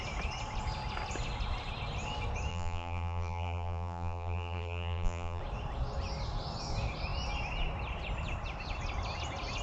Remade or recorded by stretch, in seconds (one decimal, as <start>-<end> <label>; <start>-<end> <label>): 0.0-2.5 recorded; 2.5-5.4 remade; 5.4-9.6 recorded